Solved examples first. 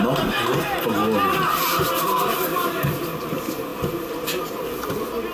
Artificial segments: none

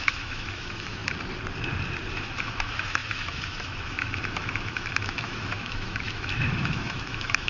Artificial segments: 0.0-1.0 (autoencoder, DAC-VAE); 2.1-7.5

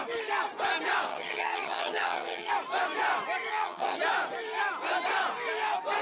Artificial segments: 1.1-2.5 (vocoder, HiFi-GAN); 3.5-4.0

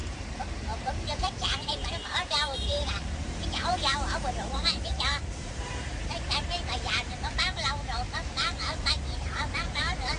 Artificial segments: 0.0-10.2 (vocoder, BigVGAN v2)